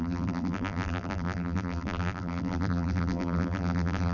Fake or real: fake